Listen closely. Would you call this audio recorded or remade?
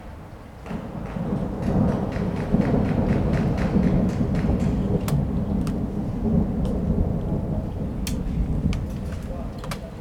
recorded